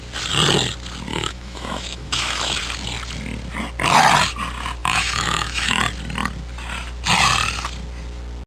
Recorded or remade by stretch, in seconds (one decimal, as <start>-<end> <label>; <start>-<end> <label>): 0.0-1.1 recorded; 1.1-2.6 remade; 2.6-4.8 recorded; 4.8-5.8 remade; 5.8-8.5 recorded